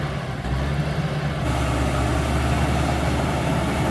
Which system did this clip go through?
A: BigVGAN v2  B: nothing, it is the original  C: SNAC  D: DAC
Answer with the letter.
B